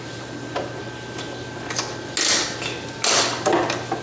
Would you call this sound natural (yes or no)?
yes